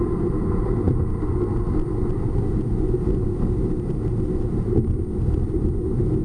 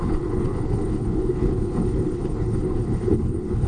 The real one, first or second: first